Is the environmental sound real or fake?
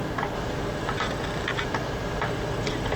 real